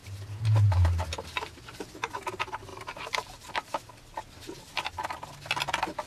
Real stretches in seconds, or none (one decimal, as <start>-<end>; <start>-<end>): 1.9-2.7; 3.9-6.1